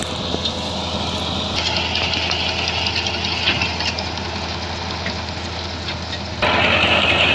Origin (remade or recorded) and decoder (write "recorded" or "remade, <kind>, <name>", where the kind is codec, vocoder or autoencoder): recorded